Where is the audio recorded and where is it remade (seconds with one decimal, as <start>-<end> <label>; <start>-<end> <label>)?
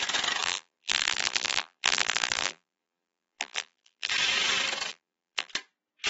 0.0-0.4 recorded; 0.4-4.1 remade; 4.1-4.9 recorded; 4.9-5.5 remade; 5.5-6.1 recorded